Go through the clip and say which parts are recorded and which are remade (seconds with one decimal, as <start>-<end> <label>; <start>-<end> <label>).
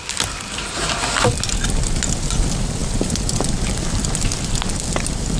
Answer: 0.0-5.4 recorded